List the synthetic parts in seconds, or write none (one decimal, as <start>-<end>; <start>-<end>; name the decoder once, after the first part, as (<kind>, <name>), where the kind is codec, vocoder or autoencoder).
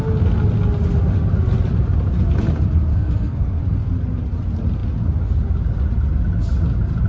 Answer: 2.9-3.6 (codec, SNAC)